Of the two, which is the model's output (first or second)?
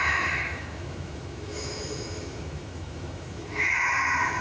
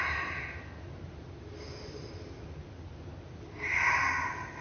first